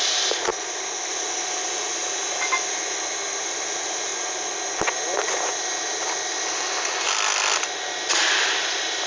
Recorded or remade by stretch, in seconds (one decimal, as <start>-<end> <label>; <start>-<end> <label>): 0.0-2.0 remade; 2.0-3.4 recorded; 3.4-4.1 remade; 4.1-9.1 recorded

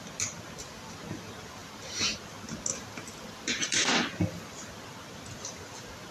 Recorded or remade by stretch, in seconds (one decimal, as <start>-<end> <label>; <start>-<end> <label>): 0.0-1.6 recorded; 1.6-2.2 remade; 2.2-2.7 recorded; 2.7-3.9 remade; 3.9-6.1 recorded